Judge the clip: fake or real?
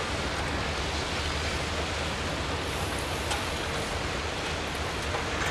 real